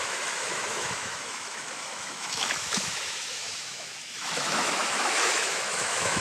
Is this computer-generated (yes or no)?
yes